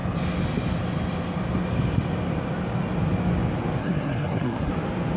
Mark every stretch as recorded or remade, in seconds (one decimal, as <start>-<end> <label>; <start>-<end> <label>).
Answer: 0.0-3.8 recorded; 3.8-4.7 remade; 4.7-5.2 recorded